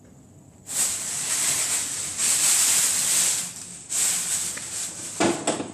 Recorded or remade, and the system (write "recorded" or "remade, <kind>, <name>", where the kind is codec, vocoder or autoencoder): recorded